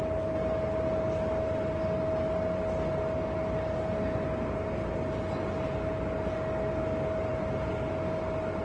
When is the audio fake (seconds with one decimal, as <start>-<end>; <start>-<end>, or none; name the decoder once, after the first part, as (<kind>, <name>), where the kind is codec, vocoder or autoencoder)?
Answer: none